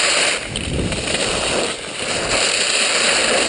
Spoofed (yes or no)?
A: no